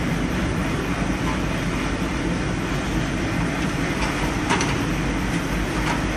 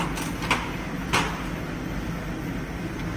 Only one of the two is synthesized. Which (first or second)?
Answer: first